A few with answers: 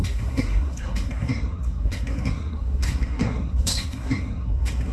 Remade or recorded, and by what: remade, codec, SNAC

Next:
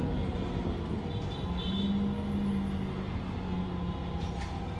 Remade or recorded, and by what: recorded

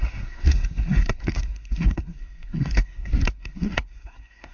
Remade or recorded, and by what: remade, codec, SNAC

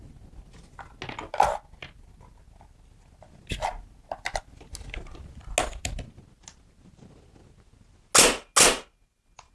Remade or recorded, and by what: recorded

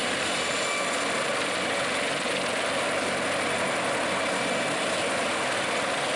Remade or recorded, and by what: recorded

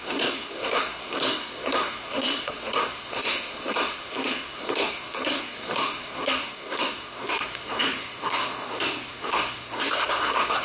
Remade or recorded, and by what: remade, codec, SNAC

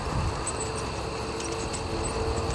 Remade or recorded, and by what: recorded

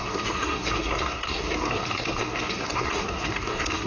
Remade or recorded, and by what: remade, codec, SNAC